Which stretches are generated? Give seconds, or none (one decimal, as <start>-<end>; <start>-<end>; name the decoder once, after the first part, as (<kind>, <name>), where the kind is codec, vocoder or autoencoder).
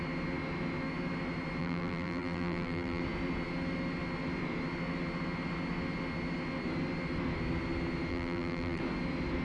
1.6-3.0 (vocoder, BigVGAN v2); 8.1-8.8